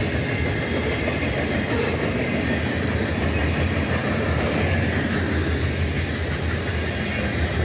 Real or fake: real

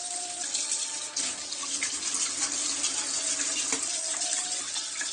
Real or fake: real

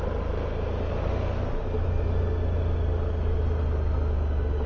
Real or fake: real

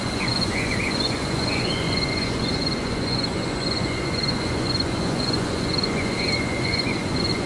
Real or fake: fake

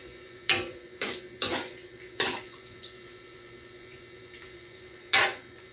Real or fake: fake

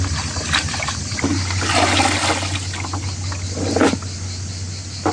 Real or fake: real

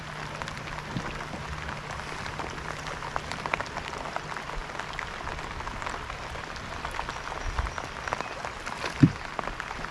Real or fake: real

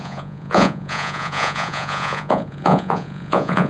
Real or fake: fake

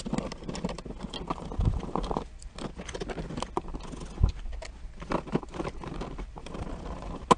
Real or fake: real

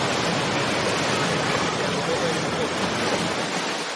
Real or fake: real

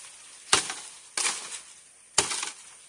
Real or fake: real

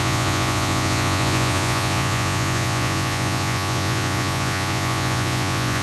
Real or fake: fake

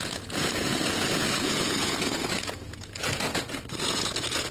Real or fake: fake